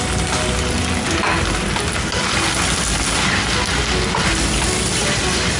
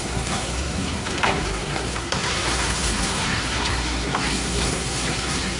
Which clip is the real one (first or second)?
first